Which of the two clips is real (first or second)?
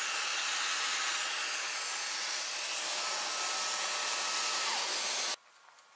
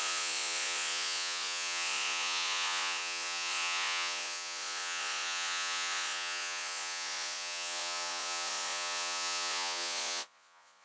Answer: first